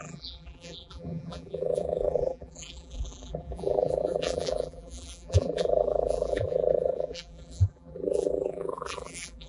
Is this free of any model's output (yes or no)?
no